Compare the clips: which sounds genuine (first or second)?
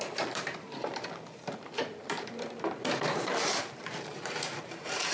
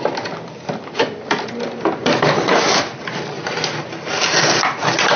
second